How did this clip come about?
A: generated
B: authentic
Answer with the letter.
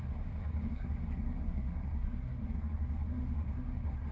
A